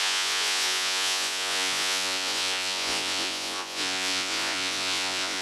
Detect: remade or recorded remade